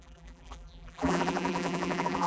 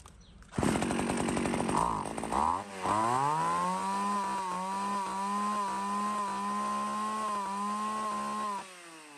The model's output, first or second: first